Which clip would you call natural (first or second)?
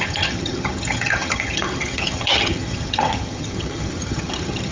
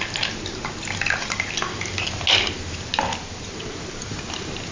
second